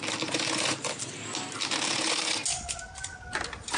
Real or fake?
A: real